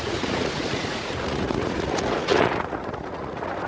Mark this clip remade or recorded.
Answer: remade